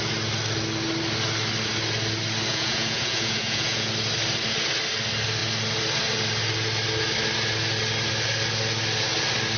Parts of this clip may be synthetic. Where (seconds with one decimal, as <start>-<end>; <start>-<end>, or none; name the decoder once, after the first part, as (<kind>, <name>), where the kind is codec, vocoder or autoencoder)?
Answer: 2.5-3.9 (vocoder, Vocos)